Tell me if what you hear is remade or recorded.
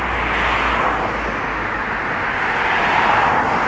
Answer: recorded